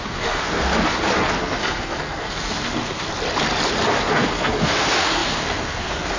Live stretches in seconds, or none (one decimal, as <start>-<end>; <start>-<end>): 0.7-1.4; 3.1-4.1

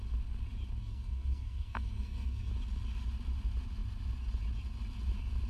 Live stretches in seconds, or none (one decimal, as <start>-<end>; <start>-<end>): 0.0-0.8; 2.5-5.5

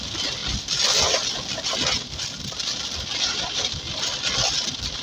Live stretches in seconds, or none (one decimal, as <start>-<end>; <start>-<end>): 0.0-5.0